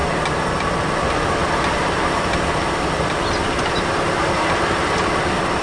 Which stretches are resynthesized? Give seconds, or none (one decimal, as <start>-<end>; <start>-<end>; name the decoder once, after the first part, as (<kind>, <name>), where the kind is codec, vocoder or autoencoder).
none